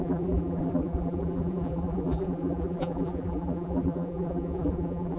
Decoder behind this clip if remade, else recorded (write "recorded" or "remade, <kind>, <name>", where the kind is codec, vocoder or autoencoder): remade, vocoder, BigVGAN v2